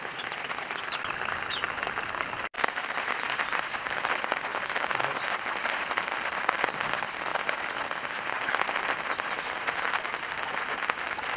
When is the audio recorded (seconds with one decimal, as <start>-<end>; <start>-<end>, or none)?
0.0-11.4